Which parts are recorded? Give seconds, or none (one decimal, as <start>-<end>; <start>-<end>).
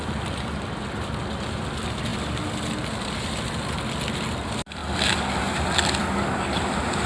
0.0-6.0; 6.6-7.1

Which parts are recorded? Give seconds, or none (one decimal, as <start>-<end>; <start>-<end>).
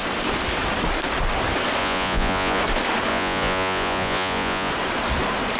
0.0-1.8; 2.6-3.1; 4.7-5.6